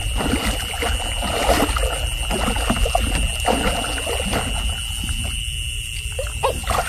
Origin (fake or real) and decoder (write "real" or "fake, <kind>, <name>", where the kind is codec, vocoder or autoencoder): real